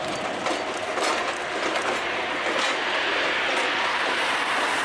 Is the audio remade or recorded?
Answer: recorded